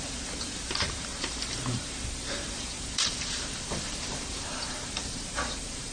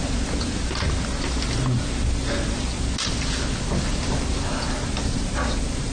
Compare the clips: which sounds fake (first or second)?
first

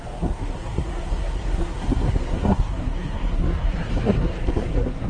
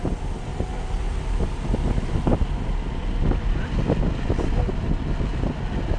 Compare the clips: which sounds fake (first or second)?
first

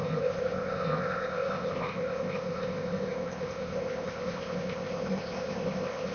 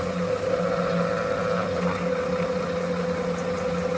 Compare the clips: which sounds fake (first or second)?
first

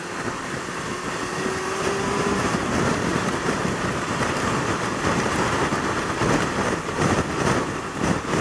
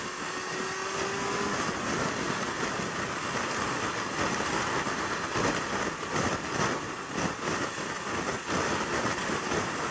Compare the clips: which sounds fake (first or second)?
first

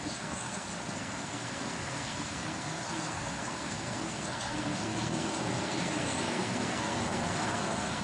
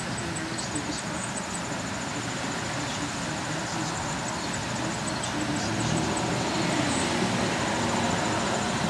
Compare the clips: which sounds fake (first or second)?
first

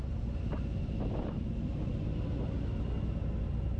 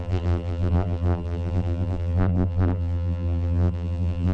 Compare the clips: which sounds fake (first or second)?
second